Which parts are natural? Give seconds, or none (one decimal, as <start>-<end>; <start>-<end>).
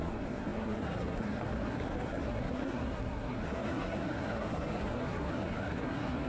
none